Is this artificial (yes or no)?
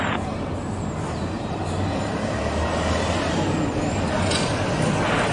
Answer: no